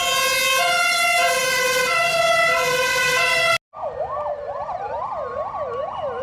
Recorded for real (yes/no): yes